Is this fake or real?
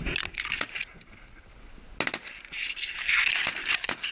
real